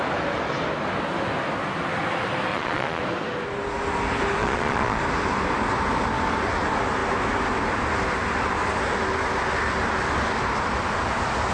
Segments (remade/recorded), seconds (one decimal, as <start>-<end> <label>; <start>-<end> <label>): 0.0-2.5 recorded; 2.5-3.0 remade; 3.0-4.4 recorded; 4.4-5.0 remade; 5.0-11.5 recorded